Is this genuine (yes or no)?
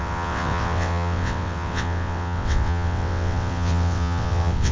no